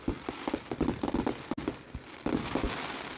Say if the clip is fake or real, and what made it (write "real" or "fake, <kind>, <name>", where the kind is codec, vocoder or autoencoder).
real